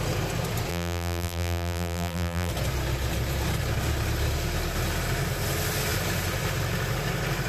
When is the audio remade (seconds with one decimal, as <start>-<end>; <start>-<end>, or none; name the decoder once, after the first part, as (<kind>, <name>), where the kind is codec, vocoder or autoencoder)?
0.7-2.5 (vocoder, BigVGAN v2)